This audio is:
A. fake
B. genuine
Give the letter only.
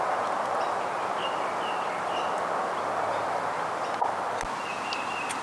B